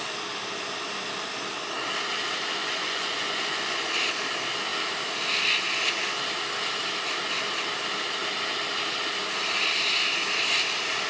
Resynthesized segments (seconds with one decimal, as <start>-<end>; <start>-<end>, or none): 2.6-3.9

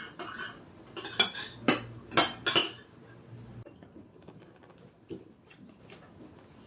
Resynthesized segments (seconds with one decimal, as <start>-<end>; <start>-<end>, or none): none

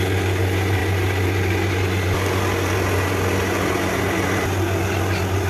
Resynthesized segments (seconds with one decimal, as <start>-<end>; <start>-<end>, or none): none

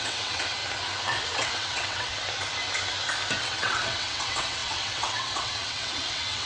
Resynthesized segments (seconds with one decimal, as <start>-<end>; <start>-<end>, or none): 0.0-0.6; 1.2-2.1; 3.4-6.5

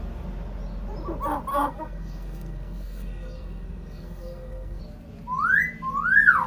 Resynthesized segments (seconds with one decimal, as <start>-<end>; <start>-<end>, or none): 1.5-4.8